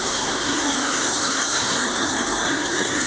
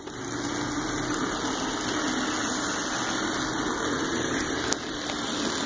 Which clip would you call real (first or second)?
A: second